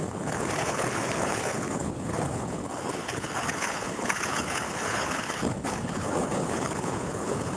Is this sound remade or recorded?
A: remade